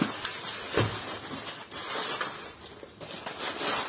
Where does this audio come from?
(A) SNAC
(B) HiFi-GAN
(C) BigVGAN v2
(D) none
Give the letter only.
D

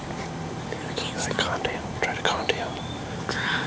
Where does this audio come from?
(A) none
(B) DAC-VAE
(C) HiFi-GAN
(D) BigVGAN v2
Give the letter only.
A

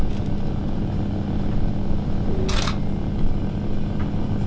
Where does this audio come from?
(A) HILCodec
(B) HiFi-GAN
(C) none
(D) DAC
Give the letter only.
C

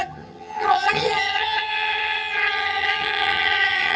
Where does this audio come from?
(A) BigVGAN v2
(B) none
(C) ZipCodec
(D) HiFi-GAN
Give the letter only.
D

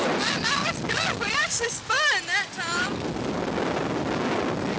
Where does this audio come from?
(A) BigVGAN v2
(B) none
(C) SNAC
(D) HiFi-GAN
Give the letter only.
B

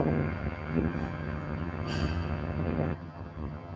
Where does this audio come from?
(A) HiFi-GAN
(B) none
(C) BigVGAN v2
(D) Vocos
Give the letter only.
A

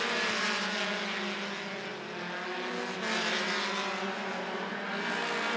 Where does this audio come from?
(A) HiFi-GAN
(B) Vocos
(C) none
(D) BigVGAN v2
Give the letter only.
C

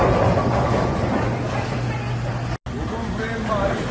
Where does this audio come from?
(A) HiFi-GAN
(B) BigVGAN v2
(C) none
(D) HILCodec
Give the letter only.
C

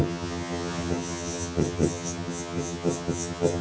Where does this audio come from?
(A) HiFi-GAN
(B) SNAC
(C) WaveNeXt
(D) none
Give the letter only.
A